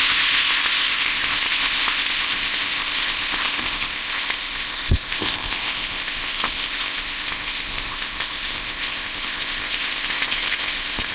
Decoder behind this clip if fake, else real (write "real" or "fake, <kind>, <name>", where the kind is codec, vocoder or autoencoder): fake, codec, ZipCodec